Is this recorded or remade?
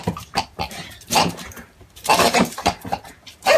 remade